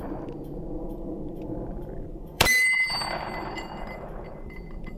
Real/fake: fake